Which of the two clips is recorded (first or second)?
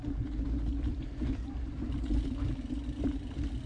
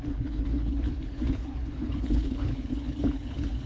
first